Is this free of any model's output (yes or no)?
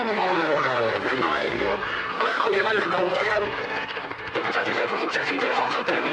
no